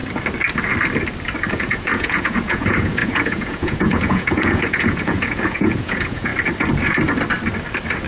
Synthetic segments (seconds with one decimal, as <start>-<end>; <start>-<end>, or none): 1.5-6.3